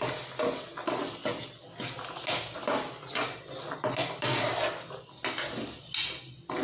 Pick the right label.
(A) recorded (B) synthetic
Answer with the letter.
A